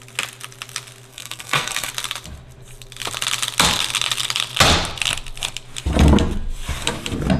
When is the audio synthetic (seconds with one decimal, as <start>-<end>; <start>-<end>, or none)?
1.1-1.9